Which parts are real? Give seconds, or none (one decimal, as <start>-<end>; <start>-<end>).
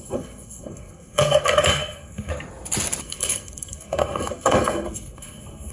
2.3-3.0